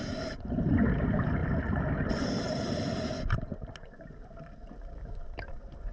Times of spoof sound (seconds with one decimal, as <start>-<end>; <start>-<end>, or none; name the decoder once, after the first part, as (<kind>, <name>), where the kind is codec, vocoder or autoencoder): 0.0-1.4 (vocoder, BigVGAN v2); 2.1-3.5; 4.0-5.9